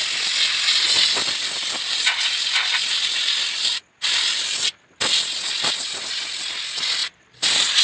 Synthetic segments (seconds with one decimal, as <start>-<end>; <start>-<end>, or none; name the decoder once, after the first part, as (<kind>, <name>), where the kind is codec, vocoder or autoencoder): 1.2-4.8 (vocoder, BigVGAN v2); 7.0-7.8